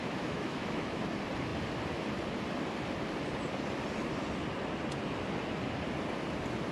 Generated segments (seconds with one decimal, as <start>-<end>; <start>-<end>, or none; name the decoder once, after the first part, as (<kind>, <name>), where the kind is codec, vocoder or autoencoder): 0.0-1.0 (autoencoder, DAC-VAE)